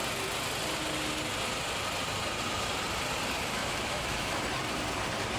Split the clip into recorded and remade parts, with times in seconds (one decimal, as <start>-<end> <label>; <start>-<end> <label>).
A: 0.0-3.6 recorded; 3.6-4.4 remade; 4.4-5.4 recorded